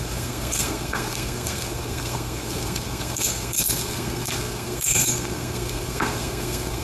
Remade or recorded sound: remade